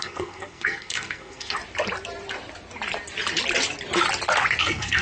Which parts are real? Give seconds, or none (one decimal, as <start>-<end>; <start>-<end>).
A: 1.6-4.6